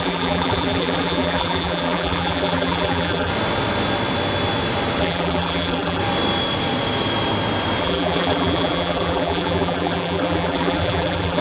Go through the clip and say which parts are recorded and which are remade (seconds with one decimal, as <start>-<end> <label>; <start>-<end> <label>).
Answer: 0.0-3.3 remade; 3.3-5.0 recorded; 5.0-6.0 remade; 6.0-7.8 recorded; 7.8-11.4 remade

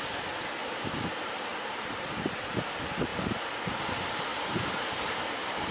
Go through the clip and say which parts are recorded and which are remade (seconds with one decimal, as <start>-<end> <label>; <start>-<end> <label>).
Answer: 0.0-0.6 recorded; 0.6-2.1 remade; 2.1-4.3 recorded; 4.3-5.7 remade

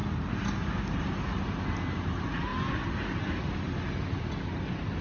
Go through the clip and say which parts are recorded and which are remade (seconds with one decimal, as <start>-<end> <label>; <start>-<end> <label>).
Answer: 0.0-5.0 recorded

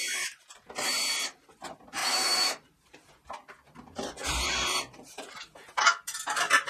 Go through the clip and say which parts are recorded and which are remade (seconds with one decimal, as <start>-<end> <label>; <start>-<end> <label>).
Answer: 0.0-1.1 remade; 1.1-2.0 recorded; 2.0-3.1 remade; 3.1-4.2 recorded; 4.2-5.2 remade; 5.2-6.7 recorded

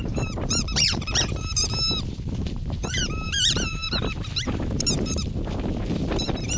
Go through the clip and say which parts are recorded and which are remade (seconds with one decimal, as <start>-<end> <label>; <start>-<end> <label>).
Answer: 0.0-3.8 remade; 3.8-5.9 recorded; 5.9-6.6 remade

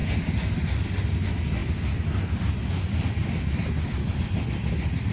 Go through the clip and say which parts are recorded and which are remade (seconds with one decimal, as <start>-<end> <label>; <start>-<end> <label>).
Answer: 0.0-5.1 recorded

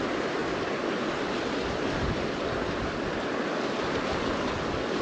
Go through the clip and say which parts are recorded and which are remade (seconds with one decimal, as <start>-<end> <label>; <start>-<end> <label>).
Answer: 0.0-0.4 recorded; 0.4-3.4 remade; 3.4-5.0 recorded

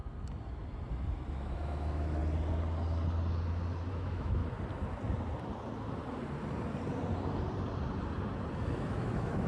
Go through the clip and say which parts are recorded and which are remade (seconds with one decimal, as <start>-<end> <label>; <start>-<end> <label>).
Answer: 0.0-1.3 recorded; 1.3-2.2 remade; 2.2-3.9 recorded; 3.9-4.4 remade; 4.4-8.5 recorded; 8.5-9.5 remade